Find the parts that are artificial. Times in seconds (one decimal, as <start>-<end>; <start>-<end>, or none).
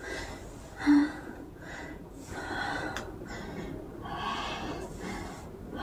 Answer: 1.0-2.5